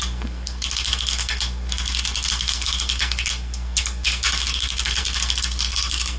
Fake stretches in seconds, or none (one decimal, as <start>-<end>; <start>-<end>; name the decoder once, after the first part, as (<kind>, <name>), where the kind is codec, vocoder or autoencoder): 0.0-6.2 (codec, SNAC)